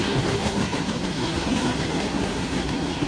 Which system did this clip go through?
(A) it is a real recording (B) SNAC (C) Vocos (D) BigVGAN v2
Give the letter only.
B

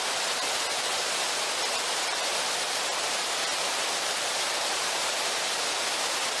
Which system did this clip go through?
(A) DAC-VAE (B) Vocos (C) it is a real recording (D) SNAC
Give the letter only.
C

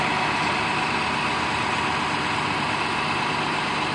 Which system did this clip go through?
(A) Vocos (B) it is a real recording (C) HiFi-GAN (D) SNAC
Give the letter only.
B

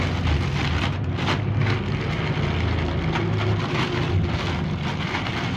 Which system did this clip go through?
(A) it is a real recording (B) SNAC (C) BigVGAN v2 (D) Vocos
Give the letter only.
A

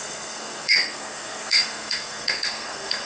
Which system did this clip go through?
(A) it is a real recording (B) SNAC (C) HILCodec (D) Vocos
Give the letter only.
B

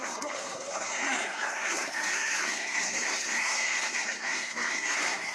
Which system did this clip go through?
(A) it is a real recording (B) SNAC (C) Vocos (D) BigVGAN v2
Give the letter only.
B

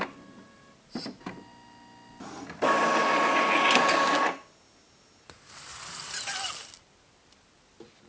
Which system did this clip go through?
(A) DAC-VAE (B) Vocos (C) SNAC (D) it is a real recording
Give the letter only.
D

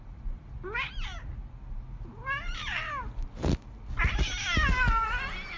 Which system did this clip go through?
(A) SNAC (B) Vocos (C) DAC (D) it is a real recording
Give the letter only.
D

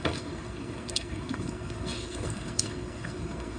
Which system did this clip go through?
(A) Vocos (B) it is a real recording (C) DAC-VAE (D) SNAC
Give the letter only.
D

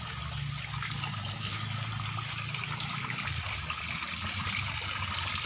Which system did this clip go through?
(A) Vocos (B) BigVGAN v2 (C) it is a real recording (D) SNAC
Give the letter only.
C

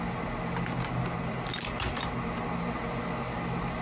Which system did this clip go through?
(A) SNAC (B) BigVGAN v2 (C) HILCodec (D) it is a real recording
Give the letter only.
D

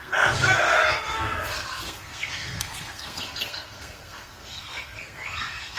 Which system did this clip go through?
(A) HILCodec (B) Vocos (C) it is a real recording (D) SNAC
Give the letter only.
D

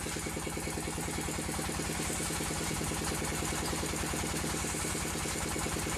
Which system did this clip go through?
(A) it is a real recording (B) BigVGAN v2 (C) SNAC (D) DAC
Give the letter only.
A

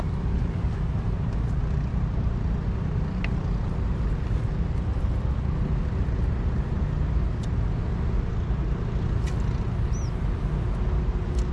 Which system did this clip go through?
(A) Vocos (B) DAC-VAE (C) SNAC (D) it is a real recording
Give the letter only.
D